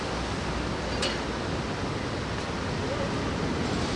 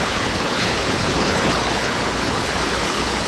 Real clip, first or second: first